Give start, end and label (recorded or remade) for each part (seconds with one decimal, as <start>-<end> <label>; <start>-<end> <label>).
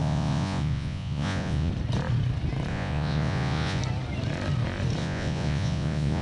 0.0-1.7 remade; 1.7-2.7 recorded; 2.7-3.8 remade; 3.8-5.0 recorded; 5.0-6.2 remade